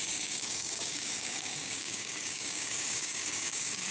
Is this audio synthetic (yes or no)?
yes